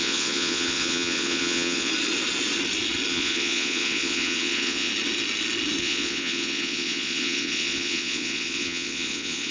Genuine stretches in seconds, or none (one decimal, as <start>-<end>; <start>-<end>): 1.9-3.1; 4.9-5.8